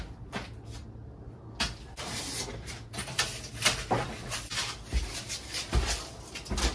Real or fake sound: real